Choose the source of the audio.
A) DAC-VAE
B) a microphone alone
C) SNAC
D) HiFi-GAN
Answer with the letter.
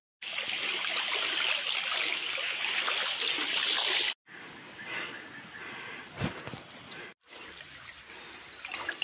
B